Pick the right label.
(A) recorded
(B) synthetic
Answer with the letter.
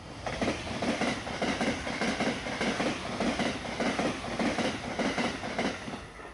A